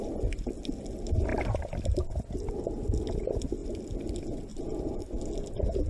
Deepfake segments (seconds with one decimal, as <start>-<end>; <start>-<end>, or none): 4.5-5.2